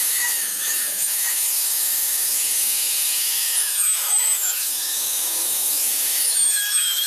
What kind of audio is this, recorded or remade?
remade